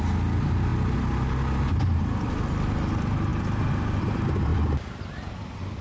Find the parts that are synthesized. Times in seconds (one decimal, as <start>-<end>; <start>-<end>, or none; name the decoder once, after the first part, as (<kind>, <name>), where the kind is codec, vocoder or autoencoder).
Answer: none